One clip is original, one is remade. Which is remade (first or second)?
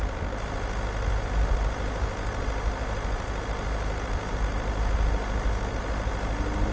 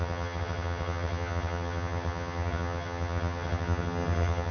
second